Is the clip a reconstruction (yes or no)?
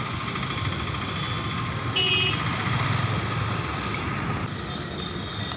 no